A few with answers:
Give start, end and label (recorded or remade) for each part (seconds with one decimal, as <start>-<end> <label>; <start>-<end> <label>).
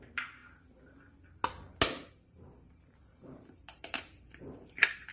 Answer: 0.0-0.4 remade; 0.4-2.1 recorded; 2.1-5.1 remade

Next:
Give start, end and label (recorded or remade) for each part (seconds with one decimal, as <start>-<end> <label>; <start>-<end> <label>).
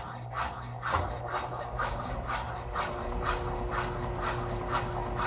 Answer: 0.0-1.5 recorded; 1.5-2.5 remade; 2.5-5.3 recorded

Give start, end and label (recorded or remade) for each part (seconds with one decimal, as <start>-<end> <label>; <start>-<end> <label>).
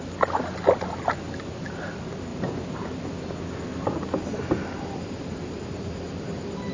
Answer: 0.0-6.7 recorded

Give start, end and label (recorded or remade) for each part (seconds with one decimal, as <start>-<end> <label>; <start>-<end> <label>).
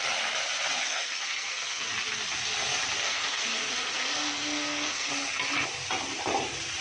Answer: 0.0-0.8 recorded; 0.8-1.9 remade; 1.9-3.0 recorded; 3.0-5.1 remade; 5.1-6.8 recorded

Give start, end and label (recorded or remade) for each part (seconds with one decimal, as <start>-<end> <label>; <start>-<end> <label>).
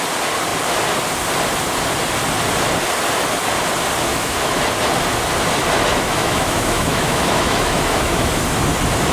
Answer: 0.0-4.1 recorded; 4.1-4.6 remade; 4.6-5.9 recorded; 5.9-8.3 remade; 8.3-9.1 recorded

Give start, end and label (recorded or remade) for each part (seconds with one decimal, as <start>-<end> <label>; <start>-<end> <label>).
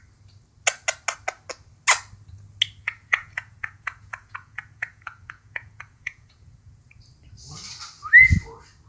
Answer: 0.0-2.8 recorded; 2.8-7.0 remade; 7.0-8.9 recorded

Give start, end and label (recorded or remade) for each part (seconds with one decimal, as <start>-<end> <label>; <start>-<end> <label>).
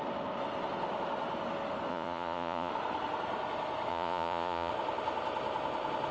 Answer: 0.0-1.9 recorded; 1.9-2.7 remade; 2.7-3.9 recorded; 3.9-4.7 remade; 4.7-6.1 recorded